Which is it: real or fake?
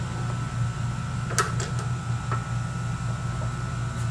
real